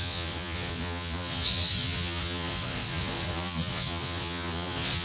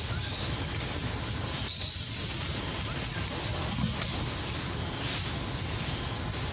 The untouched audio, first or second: second